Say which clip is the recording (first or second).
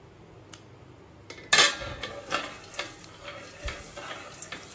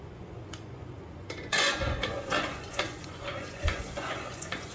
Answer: first